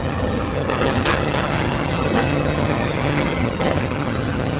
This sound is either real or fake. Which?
fake